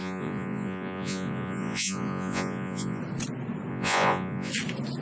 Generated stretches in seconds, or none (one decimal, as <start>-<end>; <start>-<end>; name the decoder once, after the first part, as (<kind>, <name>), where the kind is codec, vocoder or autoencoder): 0.0-3.0 (vocoder, Vocos); 3.7-4.5